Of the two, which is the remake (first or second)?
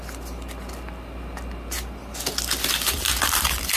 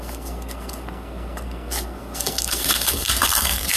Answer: second